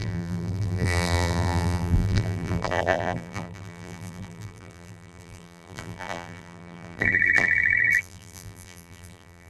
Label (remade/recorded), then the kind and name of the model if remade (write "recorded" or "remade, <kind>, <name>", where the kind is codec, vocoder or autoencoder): remade, vocoder, BigVGAN v2